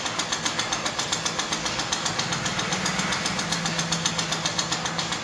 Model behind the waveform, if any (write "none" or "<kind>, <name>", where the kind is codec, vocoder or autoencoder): none